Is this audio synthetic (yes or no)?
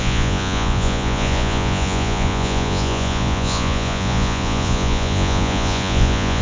yes